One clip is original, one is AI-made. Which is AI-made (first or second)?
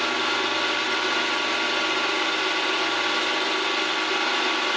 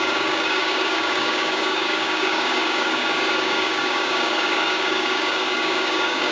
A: second